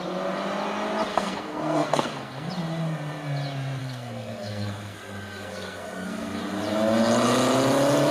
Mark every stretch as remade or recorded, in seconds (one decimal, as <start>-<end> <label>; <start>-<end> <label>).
0.0-1.1 recorded; 1.1-2.5 remade; 2.5-3.8 recorded; 3.8-6.4 remade; 6.4-8.1 recorded